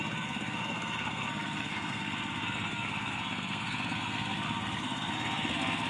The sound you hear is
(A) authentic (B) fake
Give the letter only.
B